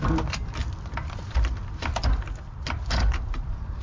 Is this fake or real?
real